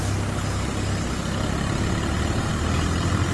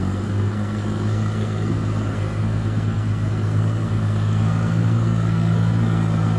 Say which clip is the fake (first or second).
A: second